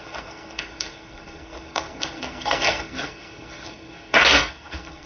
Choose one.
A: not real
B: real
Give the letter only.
A